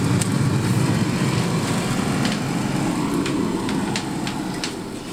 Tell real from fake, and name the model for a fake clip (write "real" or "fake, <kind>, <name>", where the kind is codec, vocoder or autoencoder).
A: real